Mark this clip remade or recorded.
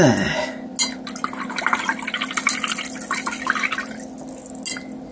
recorded